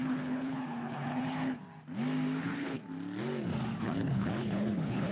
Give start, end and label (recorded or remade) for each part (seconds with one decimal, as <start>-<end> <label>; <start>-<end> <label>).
0.0-1.6 remade; 1.6-2.4 recorded; 2.4-2.8 remade; 2.8-3.8 recorded; 3.8-5.1 remade